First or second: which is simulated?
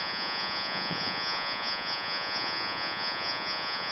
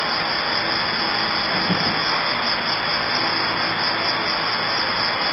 first